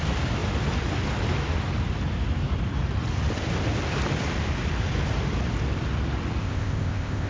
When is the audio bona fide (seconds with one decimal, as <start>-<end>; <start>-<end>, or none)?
0.0-6.4